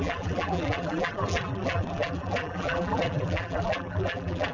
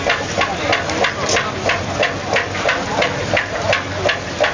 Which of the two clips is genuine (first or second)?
second